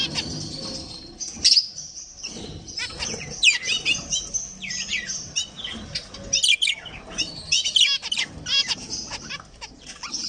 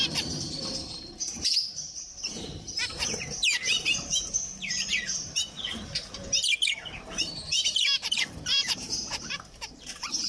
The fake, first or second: second